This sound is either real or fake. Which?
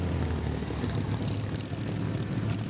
real